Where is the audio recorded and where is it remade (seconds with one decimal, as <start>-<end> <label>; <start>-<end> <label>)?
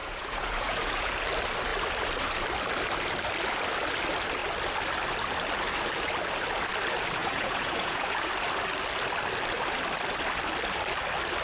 0.0-1.1 remade; 1.1-7.2 recorded; 7.2-8.3 remade; 8.3-11.4 recorded